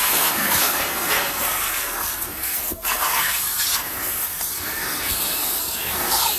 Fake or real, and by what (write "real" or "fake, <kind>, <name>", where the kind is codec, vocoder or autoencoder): fake, codec, SNAC